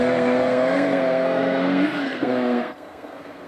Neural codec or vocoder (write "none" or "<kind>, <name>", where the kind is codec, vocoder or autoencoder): codec, SNAC